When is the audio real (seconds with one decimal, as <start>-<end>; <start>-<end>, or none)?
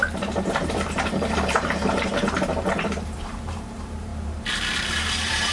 4.1-4.9